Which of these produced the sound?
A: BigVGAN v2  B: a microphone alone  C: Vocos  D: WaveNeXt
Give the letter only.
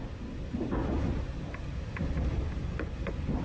B